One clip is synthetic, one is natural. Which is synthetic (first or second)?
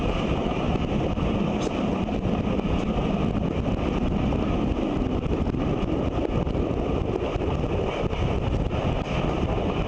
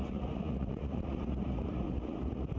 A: second